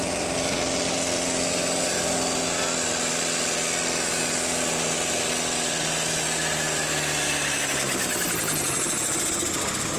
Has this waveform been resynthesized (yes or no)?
no